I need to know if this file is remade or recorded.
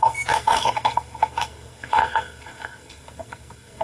remade